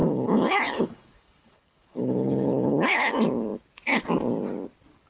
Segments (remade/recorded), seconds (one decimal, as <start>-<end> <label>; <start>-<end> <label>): 0.0-3.1 remade; 3.1-5.1 recorded